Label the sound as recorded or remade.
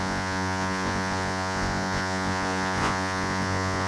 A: remade